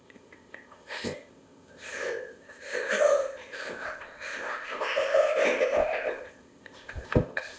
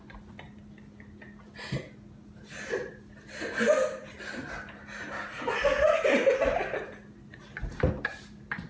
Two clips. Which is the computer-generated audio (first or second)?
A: first